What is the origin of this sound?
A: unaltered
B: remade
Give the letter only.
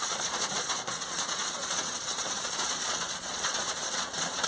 B